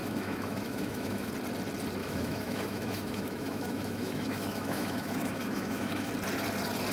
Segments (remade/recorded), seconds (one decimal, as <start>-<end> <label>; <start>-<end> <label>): 0.0-1.3 remade; 1.3-2.0 recorded; 2.0-6.1 remade; 6.1-6.9 recorded